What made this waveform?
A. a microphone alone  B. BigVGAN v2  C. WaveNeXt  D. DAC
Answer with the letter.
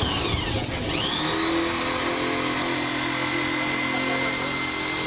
A